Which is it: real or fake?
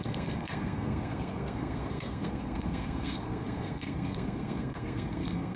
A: fake